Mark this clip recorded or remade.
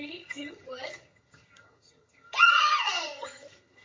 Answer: remade